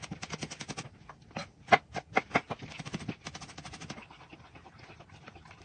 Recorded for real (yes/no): yes